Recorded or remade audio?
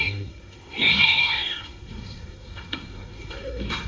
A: remade